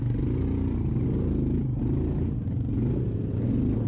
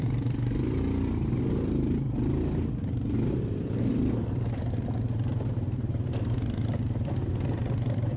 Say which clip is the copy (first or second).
second